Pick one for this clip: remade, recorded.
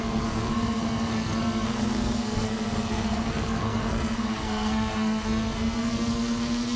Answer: remade